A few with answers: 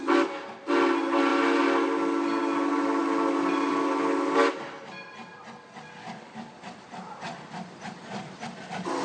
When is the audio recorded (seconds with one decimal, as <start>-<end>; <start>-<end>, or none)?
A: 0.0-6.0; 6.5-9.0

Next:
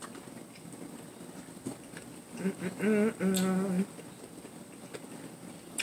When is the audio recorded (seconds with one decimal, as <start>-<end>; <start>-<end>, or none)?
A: 0.0-5.8

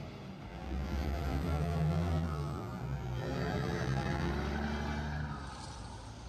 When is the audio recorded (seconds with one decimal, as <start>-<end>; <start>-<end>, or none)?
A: 0.0-0.5; 4.3-6.3